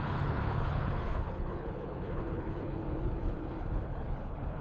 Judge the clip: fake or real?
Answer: fake